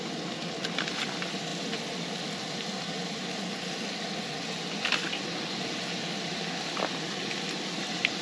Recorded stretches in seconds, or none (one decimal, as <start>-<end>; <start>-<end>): 0.0-8.2